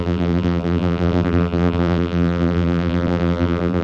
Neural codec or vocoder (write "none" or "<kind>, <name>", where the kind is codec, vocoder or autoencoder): vocoder, BigVGAN v2